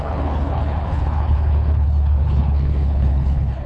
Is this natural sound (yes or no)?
no